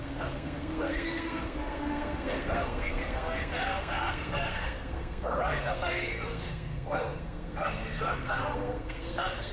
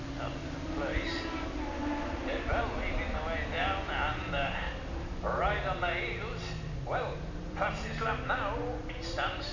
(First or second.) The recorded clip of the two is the second